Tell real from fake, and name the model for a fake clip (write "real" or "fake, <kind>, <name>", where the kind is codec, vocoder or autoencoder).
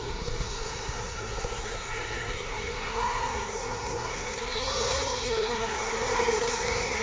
fake, codec, SNAC